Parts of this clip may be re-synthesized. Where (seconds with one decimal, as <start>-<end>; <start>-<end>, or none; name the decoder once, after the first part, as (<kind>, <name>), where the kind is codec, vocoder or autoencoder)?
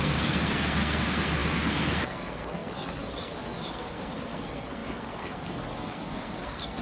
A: 0.0-6.8 (codec, SNAC)